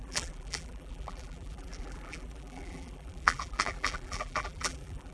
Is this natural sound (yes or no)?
no